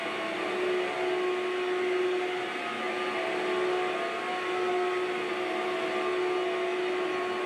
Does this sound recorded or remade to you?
recorded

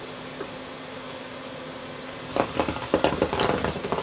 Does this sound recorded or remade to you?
recorded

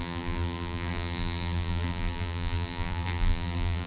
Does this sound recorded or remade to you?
remade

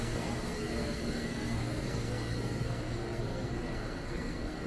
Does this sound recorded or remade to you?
remade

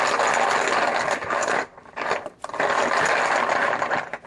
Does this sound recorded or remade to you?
recorded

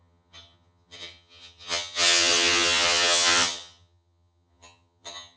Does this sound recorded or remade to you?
remade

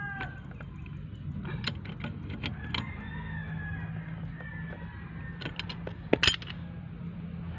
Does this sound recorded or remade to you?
recorded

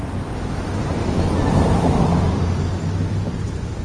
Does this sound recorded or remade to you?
remade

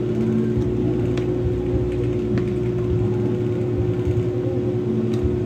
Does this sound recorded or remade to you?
recorded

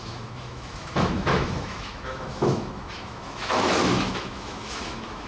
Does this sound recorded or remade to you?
remade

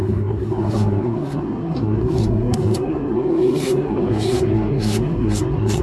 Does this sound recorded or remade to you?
remade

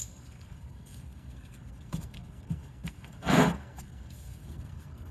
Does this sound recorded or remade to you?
remade